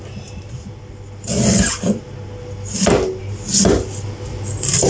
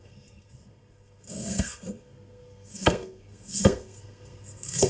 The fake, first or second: second